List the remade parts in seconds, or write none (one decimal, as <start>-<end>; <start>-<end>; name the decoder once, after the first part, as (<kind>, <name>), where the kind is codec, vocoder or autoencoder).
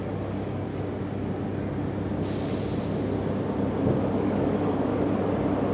0.0-0.7 (codec, DAC); 4.1-4.9